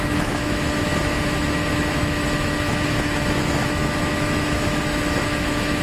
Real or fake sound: fake